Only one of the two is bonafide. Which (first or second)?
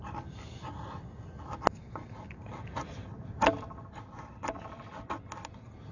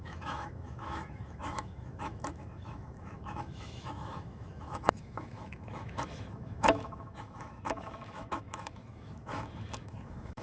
first